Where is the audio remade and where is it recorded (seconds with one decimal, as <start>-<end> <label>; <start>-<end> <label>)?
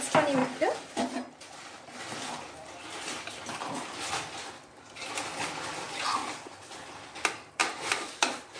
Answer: 0.0-6.2 recorded; 6.2-6.8 remade; 6.8-8.6 recorded